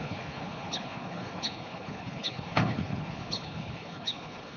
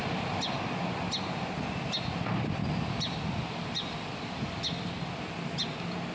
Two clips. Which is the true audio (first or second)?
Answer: second